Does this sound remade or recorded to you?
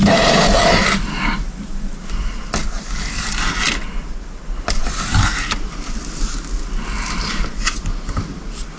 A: recorded